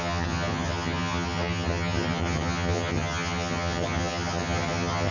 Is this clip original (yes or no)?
no